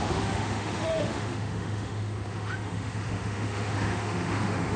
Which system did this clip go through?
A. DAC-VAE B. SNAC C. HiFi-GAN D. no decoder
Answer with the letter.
A